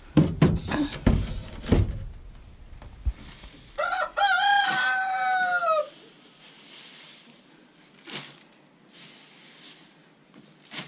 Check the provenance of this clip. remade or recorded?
recorded